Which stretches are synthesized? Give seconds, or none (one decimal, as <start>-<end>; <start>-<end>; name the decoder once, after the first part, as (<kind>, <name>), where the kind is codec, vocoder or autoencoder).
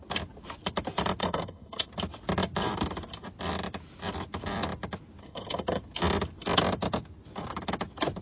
1.2-1.9 (codec, SNAC); 5.2-5.8